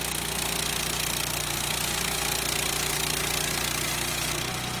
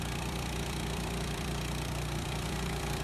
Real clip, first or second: first